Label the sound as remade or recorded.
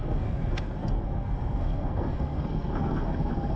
remade